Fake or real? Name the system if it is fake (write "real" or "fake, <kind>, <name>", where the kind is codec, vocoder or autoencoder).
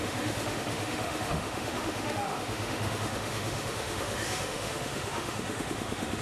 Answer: fake, autoencoder, DAC-VAE